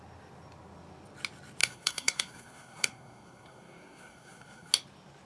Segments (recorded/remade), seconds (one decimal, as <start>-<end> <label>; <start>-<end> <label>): 0.0-1.6 recorded; 1.6-4.7 remade; 4.7-5.2 recorded